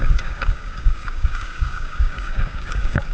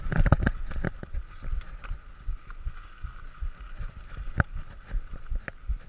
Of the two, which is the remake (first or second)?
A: first